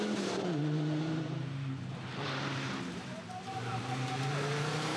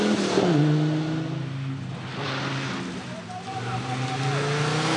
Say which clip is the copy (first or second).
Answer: first